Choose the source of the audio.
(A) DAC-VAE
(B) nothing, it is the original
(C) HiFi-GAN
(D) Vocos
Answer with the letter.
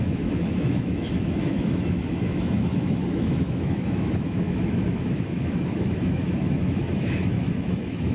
A